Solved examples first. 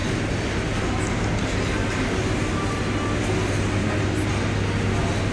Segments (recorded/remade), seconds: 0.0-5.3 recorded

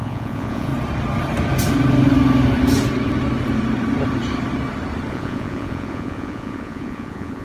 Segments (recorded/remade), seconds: 0.0-0.7 remade; 0.7-5.1 recorded; 5.1-7.4 remade

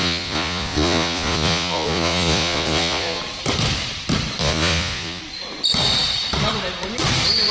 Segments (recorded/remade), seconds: 0.0-3.2 remade; 3.2-4.4 recorded; 4.4-5.2 remade; 5.2-7.5 recorded

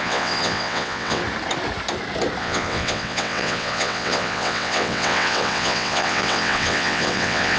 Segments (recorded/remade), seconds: 0.0-1.2 remade; 1.2-2.4 recorded; 2.4-7.6 remade

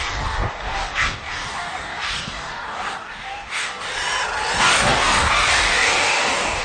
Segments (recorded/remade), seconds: 0.0-3.9 remade; 3.9-4.6 recorded; 4.6-6.6 remade

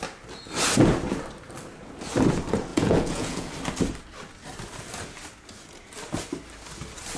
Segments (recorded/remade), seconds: 0.0-2.7 recorded; 2.7-3.5 remade; 3.5-7.2 recorded